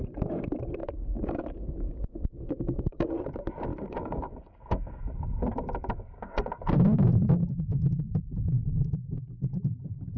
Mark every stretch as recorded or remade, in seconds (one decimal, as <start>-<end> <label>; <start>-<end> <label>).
0.0-0.8 recorded; 0.8-3.1 remade; 3.1-3.7 recorded; 3.7-5.0 remade; 5.0-10.2 recorded